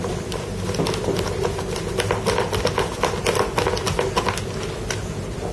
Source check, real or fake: real